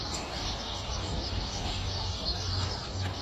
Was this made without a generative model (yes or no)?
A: no